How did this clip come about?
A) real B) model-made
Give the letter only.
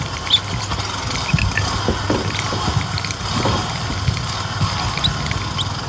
A